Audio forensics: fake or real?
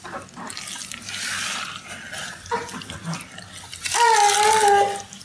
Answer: real